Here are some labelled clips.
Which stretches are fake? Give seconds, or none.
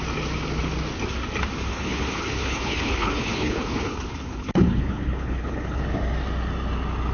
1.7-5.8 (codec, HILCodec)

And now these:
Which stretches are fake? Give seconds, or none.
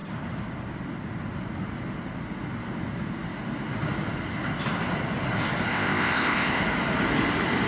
5.7-6.6 (codec, ZipCodec)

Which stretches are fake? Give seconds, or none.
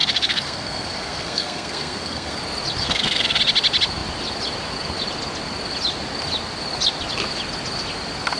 0.0-2.4 (codec, SNAC); 2.8-3.4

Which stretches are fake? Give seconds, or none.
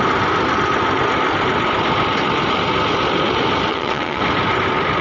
3.7-4.2 (vocoder, WaveNeXt)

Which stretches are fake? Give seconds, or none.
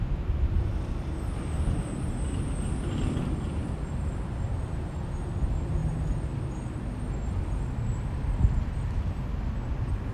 none